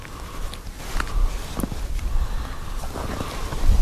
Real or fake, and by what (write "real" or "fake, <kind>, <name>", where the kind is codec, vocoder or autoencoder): real